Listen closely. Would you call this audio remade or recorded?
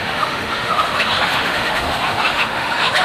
remade